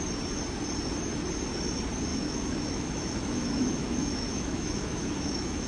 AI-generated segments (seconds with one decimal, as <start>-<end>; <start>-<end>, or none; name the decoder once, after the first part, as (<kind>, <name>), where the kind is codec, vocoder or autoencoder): 2.1-5.7 (autoencoder, DAC-VAE)